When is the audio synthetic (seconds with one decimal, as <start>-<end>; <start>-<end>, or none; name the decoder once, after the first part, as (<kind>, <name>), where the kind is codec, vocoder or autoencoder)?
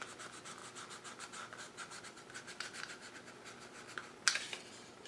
none